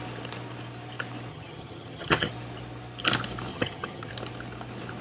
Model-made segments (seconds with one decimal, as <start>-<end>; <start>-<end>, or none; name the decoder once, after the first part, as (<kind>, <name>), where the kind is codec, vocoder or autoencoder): 1.3-2.3 (vocoder, HiFi-GAN); 3.5-4.1

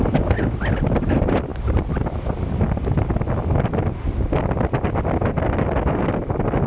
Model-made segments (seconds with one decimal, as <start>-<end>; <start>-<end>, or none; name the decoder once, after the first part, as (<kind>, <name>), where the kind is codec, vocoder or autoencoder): none

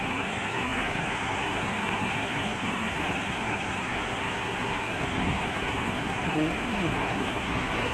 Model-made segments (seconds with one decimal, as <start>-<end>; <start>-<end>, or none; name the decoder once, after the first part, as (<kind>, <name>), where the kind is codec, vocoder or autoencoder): 0.0-7.9 (codec, SNAC)

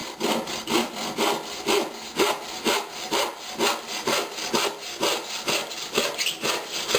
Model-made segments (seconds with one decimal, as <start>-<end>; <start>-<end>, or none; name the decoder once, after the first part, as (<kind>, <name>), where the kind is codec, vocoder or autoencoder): none

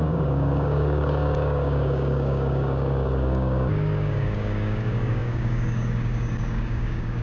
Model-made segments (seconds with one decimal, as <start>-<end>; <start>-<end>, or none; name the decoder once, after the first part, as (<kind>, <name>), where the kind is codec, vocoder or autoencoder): 0.0-7.2 (codec, DAC)

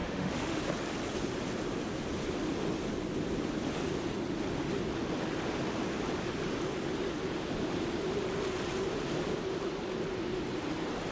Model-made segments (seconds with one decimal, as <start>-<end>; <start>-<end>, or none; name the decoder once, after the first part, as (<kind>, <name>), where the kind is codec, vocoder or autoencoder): 0.0-0.6 (autoencoder, DAC-VAE)

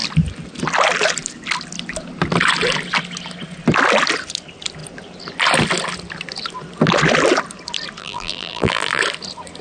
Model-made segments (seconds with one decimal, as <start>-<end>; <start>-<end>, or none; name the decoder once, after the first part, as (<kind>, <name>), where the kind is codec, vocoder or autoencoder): 8.0-9.0 (vocoder, BigVGAN v2)